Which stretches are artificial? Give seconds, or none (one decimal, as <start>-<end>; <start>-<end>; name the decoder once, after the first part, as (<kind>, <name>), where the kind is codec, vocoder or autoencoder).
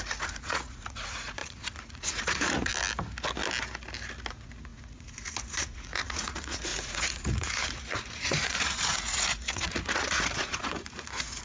0.0-2.7 (vocoder, Vocos); 4.3-11.4